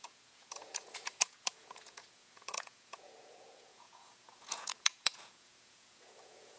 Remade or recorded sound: remade